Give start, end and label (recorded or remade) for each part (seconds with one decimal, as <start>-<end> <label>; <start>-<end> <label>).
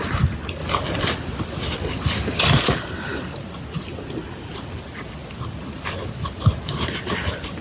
0.0-0.6 remade; 0.6-2.4 recorded; 2.4-3.1 remade; 3.1-3.8 recorded; 3.8-4.5 remade; 4.5-6.7 recorded; 6.7-7.6 remade